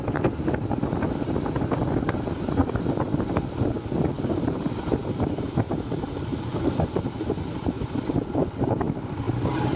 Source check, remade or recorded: remade